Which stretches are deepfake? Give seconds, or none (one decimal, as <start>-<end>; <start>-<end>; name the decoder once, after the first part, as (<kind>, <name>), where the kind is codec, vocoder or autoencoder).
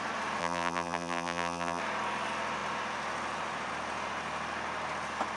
0.4-1.8 (vocoder, BigVGAN v2)